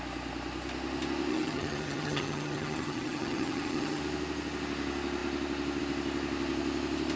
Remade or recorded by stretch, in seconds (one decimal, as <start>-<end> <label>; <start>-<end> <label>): 0.0-1.3 recorded; 1.3-4.0 remade; 4.0-7.2 recorded